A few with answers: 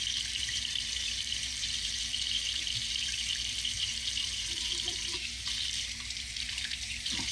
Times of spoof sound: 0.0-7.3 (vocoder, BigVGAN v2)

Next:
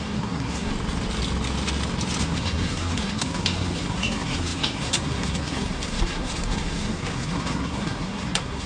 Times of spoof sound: 0.0-0.7 (codec, SNAC); 2.2-8.7

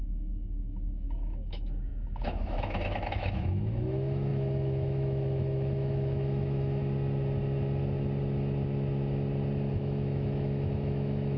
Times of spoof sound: 0.0-6.8 (autoencoder, DAC-VAE); 9.7-11.4

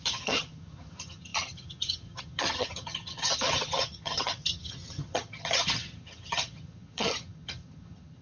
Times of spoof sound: 0.0-8.2 (vocoder, HiFi-GAN)

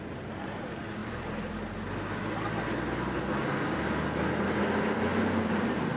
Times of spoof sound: none

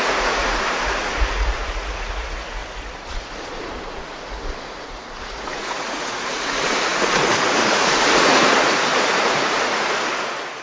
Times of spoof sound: 0.0-10.6 (vocoder, Vocos)

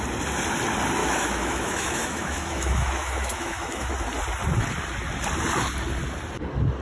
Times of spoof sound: 1.0-3.9 (autoencoder, DAC-VAE)